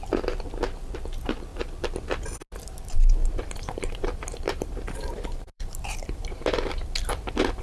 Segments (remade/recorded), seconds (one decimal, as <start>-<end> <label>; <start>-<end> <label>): 0.0-3.2 recorded; 3.2-6.7 remade; 6.7-7.6 recorded